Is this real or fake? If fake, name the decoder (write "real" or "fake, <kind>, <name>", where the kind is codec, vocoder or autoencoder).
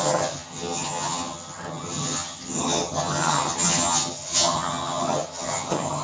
fake, vocoder, HiFi-GAN